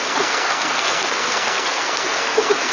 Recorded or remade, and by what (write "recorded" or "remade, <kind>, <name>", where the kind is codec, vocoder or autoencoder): remade, codec, SNAC